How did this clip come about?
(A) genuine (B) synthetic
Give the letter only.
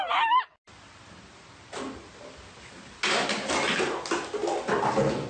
A